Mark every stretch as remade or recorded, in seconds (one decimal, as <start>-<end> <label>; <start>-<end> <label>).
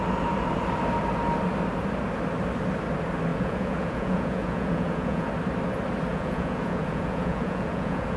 0.0-3.3 recorded; 3.3-5.3 remade; 5.3-6.1 recorded; 6.1-8.2 remade